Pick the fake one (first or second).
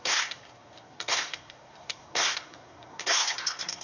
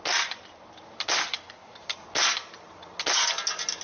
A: first